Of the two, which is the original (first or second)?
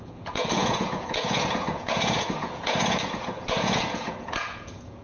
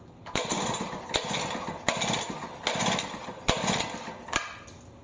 second